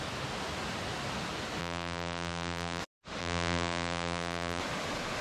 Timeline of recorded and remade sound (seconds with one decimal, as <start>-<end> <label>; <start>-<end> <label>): 0.0-1.6 recorded; 1.6-2.8 remade; 2.8-3.2 recorded; 3.2-4.6 remade; 4.6-5.2 recorded